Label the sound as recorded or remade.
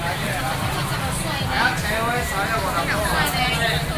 recorded